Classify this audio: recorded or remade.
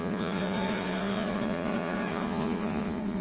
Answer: remade